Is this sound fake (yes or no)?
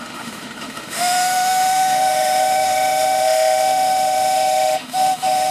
yes